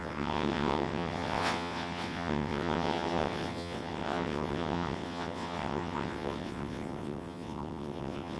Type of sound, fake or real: fake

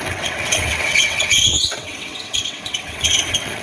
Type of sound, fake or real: fake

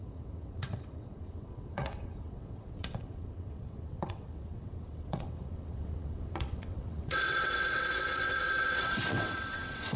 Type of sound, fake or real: fake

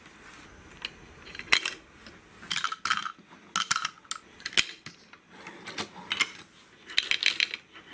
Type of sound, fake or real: real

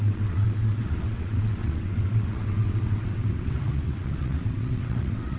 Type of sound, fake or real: fake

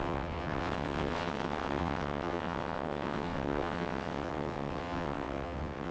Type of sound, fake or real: fake